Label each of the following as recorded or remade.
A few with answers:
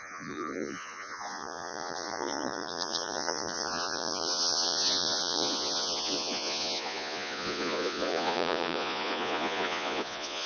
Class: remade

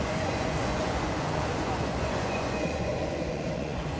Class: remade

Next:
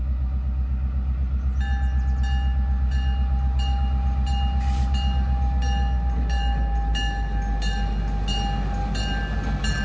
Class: recorded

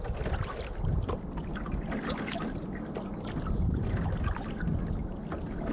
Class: recorded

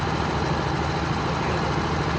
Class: recorded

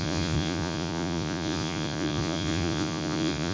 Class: remade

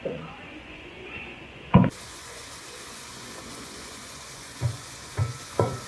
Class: remade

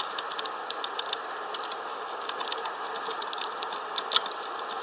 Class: recorded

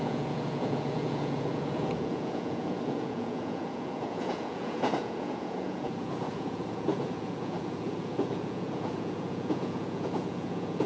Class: remade